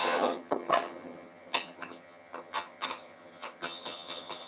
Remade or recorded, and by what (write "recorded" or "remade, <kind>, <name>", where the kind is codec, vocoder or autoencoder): remade, vocoder, HiFi-GAN